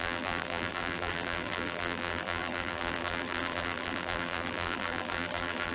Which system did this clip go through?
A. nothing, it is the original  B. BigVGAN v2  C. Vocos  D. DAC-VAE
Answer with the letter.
B